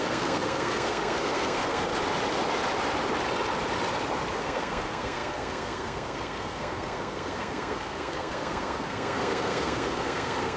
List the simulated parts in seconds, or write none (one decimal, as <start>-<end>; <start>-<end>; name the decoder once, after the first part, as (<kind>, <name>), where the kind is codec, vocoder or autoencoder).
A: 0.0-1.9 (codec, SNAC); 4.4-10.6